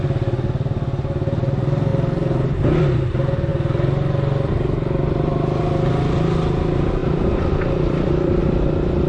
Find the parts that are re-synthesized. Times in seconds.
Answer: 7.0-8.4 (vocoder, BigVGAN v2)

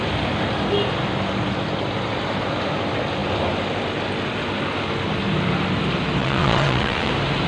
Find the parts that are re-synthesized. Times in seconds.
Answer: 6.2-7.1 (vocoder, WaveNeXt)

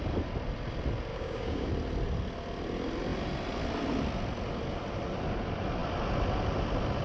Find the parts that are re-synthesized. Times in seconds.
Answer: 1.1-1.7 (codec, DAC)

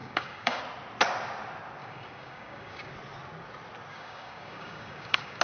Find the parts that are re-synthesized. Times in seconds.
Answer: 0.0-0.6 (codec, DAC); 1.8-2.9; 3.9-5.4